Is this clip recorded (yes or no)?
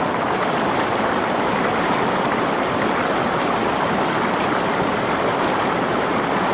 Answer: no